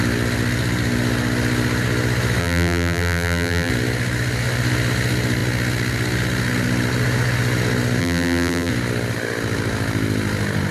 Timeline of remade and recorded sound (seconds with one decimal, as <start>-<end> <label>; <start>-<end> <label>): 0.0-2.4 recorded; 2.4-3.7 remade; 3.7-8.0 recorded; 8.0-8.7 remade; 8.7-10.7 recorded